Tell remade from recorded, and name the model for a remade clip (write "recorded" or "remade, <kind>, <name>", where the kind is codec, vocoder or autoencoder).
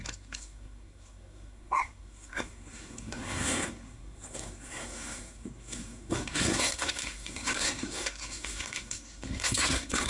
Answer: remade, codec, SNAC